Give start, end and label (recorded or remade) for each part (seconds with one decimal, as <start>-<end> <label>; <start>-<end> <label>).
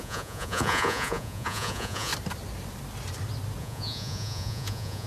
0.0-2.1 remade; 2.1-3.6 recorded; 3.6-5.1 remade